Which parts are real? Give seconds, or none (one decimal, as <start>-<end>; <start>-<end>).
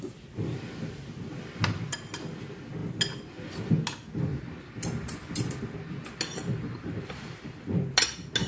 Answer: 0.0-6.4; 7.7-8.5